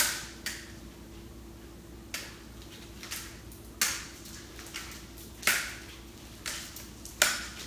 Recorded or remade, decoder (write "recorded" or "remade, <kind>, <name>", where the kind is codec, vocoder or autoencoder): recorded